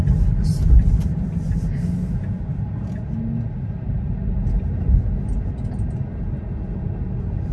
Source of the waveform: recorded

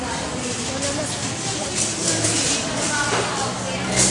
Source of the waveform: recorded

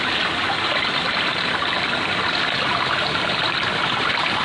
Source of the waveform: recorded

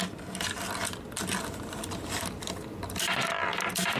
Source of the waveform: recorded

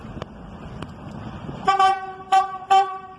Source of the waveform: remade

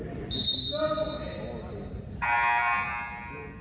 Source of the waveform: recorded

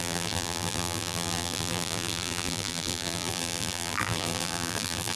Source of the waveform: remade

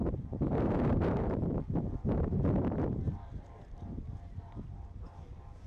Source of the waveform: remade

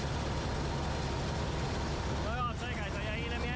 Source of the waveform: recorded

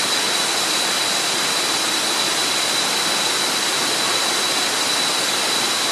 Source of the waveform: recorded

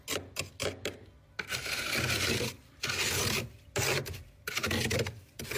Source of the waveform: recorded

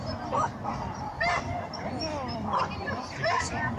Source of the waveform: remade